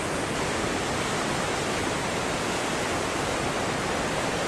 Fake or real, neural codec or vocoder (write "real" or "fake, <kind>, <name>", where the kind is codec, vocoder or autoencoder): real